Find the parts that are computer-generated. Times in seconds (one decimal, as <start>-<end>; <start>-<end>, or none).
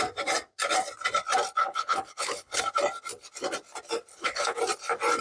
1.6-2.6; 4.1-4.6